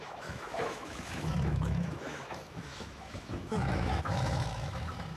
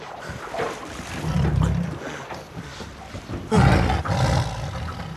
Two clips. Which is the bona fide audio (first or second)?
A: second